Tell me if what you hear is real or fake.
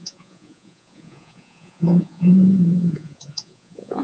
fake